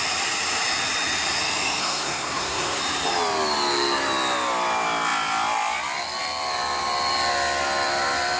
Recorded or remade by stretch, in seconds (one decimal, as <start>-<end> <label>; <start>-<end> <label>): 0.0-1.8 recorded; 1.8-2.8 remade; 2.8-8.4 recorded